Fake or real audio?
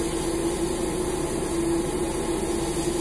real